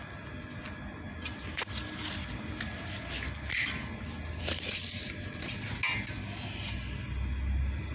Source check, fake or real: real